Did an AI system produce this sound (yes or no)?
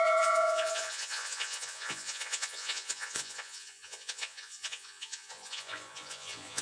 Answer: yes